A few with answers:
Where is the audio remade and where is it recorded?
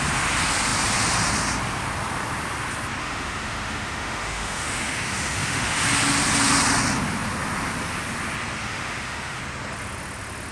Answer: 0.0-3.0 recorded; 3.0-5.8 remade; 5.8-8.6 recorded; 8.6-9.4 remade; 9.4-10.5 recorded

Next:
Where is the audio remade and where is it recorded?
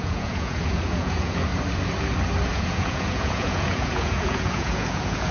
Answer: 0.0-1.5 remade; 1.5-2.5 recorded; 2.5-5.3 remade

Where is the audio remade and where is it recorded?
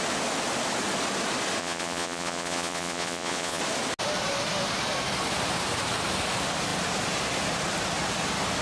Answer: 0.0-1.6 recorded; 1.6-3.6 remade; 3.6-8.6 recorded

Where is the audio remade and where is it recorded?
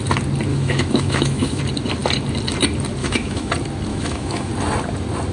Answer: 0.0-0.5 recorded; 0.5-1.6 remade; 1.6-3.0 recorded; 3.0-3.5 remade; 3.5-3.9 recorded; 3.9-4.5 remade; 4.5-5.3 recorded